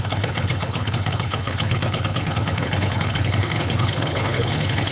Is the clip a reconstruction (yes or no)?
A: yes